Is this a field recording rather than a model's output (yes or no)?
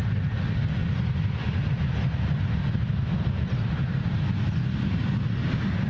yes